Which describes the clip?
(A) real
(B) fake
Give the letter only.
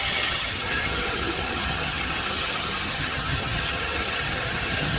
B